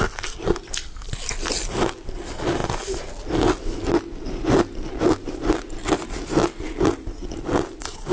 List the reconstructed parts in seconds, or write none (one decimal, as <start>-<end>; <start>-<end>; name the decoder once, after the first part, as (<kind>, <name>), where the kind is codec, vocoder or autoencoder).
none